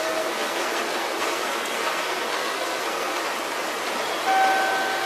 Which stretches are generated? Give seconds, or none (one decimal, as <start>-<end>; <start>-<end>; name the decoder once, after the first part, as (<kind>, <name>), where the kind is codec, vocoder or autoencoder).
0.0-3.2 (codec, SNAC)